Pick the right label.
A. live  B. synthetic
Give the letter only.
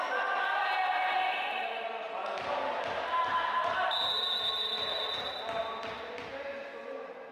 A